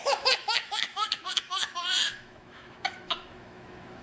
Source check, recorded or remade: remade